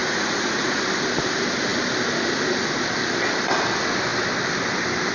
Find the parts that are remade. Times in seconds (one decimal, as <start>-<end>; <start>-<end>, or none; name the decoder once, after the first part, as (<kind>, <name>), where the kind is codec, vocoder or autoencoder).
0.0-0.8 (vocoder, Vocos)

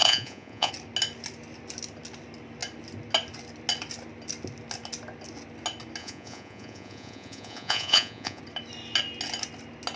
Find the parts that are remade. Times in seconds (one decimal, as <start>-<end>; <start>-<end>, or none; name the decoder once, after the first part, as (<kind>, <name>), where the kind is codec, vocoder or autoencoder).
0.0-0.7 (vocoder, Vocos); 6.0-8.4

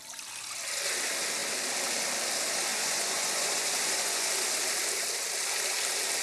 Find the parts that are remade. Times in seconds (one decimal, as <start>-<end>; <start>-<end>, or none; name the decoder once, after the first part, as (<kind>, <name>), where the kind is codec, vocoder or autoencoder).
2.7-4.3 (vocoder, Vocos)

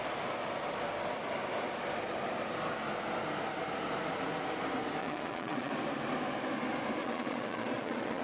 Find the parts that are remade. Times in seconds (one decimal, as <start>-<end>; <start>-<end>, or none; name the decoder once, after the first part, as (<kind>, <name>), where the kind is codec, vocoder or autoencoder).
5.0-5.7 (vocoder, Vocos); 7.0-8.2

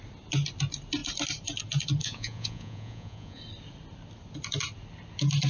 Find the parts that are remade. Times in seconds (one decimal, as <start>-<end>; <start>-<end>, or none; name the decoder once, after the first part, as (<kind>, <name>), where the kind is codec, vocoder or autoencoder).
2.0-3.4 (vocoder, Vocos)

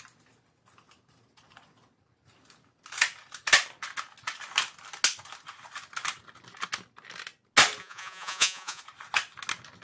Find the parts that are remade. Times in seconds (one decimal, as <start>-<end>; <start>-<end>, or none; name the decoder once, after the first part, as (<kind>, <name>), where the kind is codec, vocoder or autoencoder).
7.8-8.8 (vocoder, Vocos)

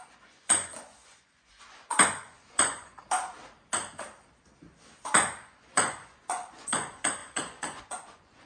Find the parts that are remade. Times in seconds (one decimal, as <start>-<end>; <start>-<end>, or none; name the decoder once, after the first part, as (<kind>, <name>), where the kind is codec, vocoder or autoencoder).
0.0-3.0 (vocoder, Vocos); 5.0-8.5

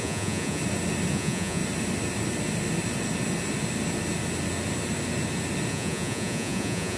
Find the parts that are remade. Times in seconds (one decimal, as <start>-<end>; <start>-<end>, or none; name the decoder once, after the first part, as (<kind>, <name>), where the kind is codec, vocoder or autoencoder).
0.0-0.6 (vocoder, Vocos); 1.1-1.6; 5.7-7.0